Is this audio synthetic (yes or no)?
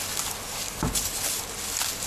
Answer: no